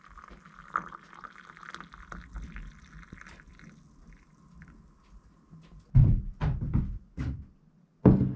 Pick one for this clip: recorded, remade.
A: recorded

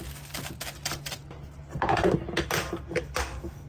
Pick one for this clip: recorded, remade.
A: recorded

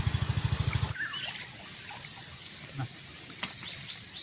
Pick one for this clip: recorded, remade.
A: recorded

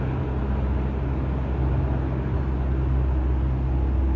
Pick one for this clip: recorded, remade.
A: recorded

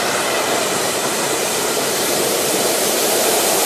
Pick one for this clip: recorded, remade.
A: remade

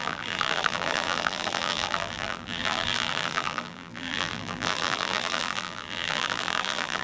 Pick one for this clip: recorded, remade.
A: remade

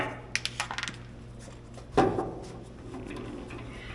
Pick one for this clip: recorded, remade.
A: recorded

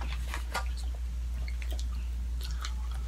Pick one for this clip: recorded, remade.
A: recorded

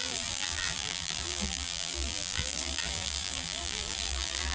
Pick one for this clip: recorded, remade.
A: remade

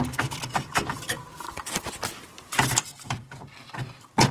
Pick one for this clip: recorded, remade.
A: remade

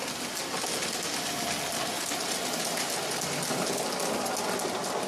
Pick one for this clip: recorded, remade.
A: recorded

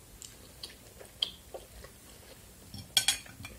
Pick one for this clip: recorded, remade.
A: recorded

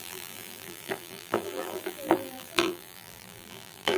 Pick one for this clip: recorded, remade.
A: remade